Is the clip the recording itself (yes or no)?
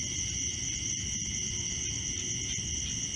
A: no